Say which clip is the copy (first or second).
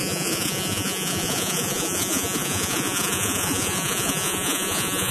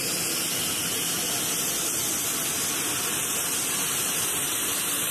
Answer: first